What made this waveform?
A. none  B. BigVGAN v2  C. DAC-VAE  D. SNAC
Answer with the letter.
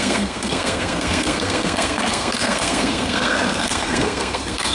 D